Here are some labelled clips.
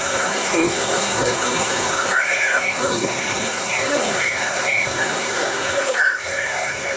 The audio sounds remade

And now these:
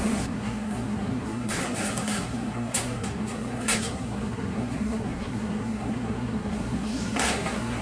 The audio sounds remade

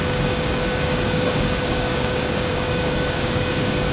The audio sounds remade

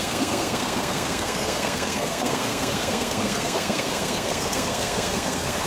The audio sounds remade